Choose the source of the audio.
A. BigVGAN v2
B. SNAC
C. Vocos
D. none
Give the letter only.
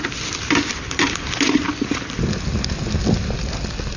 D